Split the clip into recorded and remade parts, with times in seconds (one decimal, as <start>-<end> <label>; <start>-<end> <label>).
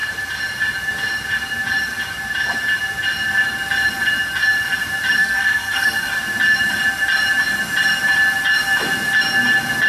0.0-5.2 recorded; 5.2-6.1 remade; 6.1-9.9 recorded